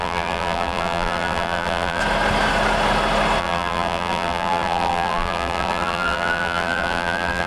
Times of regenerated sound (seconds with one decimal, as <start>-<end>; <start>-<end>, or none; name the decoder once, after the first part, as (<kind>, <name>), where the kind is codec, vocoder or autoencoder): 0.0-2.0 (vocoder, BigVGAN v2); 3.4-7.5

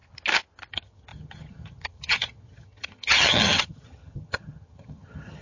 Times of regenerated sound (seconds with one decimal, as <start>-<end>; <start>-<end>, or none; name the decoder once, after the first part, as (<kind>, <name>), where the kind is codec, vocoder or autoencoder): 0.7-5.4 (vocoder, HiFi-GAN)

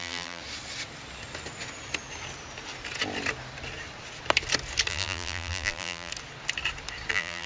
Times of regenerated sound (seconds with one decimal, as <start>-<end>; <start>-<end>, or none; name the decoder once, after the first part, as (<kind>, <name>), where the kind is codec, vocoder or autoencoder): 0.0-0.4 (vocoder, BigVGAN v2); 4.9-6.1; 7.1-7.5

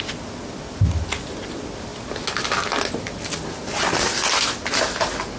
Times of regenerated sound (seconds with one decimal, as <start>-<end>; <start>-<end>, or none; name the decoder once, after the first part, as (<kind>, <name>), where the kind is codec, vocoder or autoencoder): none